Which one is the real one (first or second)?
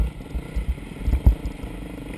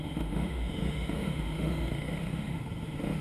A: first